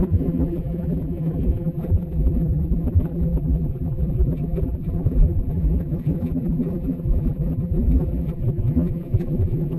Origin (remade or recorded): remade